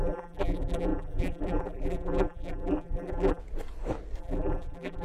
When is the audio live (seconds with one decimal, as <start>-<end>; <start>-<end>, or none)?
3.4-4.2